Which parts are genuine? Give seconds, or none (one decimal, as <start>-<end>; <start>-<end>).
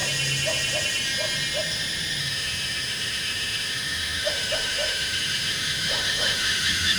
0.0-2.2